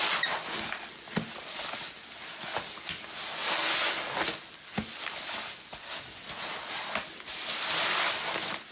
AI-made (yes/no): no